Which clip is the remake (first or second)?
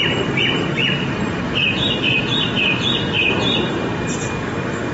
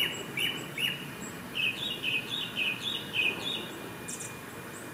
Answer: first